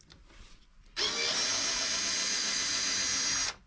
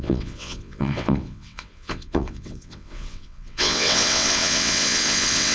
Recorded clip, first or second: first